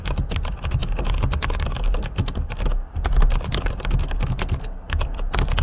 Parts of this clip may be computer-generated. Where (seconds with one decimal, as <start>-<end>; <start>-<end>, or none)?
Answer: none